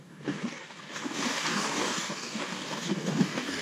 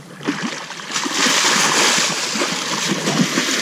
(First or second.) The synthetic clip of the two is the first